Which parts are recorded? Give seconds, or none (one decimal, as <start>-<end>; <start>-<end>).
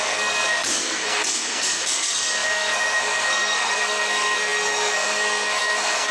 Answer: none